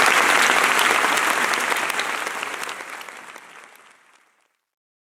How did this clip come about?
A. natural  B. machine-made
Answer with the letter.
A